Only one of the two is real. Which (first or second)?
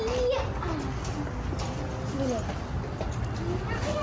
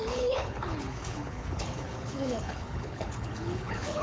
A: first